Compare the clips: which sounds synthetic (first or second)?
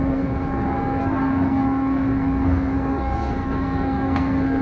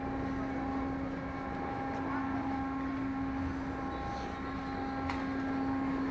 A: first